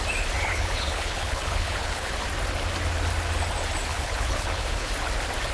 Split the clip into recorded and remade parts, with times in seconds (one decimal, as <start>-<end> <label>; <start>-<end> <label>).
0.0-0.5 recorded; 0.5-2.2 remade; 2.2-3.9 recorded; 3.9-4.9 remade; 4.9-5.5 recorded